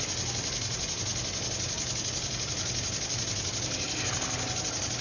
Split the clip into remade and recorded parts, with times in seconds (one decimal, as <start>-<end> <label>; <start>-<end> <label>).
0.0-5.0 recorded